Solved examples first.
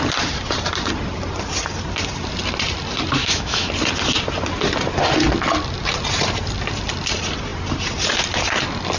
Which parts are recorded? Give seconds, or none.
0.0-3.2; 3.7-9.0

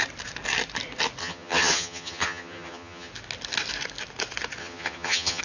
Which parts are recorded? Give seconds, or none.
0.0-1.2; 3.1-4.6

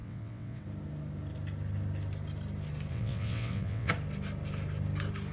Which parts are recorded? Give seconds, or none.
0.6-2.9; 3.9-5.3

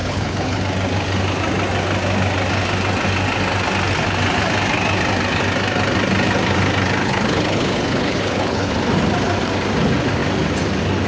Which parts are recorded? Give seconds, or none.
0.6-7.0; 8.7-11.1

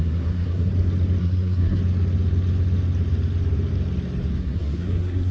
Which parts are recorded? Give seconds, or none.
0.7-1.2; 1.8-4.4

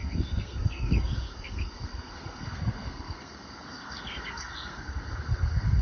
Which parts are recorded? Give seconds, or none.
none